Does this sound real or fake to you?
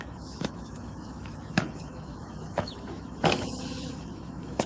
fake